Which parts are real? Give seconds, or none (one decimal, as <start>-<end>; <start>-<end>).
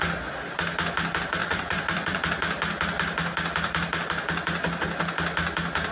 0.0-1.4; 2.2-5.9